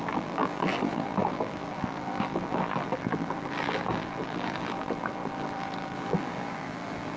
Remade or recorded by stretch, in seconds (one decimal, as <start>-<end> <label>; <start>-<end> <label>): 0.0-7.2 remade